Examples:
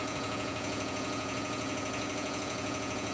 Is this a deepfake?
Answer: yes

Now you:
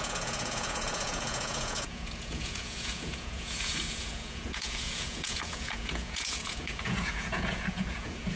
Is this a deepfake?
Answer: yes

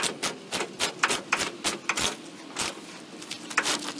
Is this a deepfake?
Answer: no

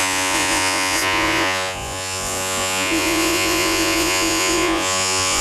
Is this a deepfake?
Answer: yes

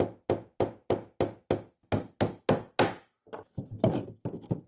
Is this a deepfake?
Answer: no